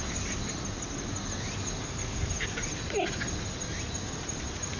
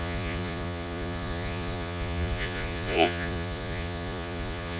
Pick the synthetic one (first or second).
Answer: second